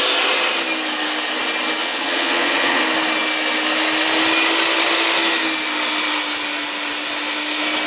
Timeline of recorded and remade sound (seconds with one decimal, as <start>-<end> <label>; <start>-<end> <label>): 0.0-1.8 recorded; 1.8-2.8 remade; 2.8-7.9 recorded